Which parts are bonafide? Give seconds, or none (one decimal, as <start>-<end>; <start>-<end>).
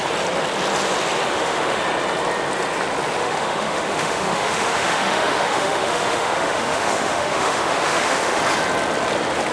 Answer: 0.0-1.3; 1.8-3.2; 8.4-9.5